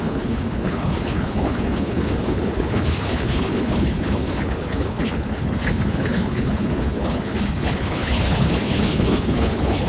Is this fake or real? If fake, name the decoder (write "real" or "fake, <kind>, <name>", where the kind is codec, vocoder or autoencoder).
fake, codec, HILCodec